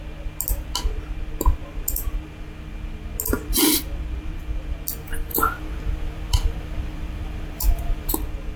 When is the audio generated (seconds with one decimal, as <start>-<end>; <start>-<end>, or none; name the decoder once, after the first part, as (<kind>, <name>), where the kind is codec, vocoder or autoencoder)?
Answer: 5.3-8.1 (vocoder, BigVGAN v2)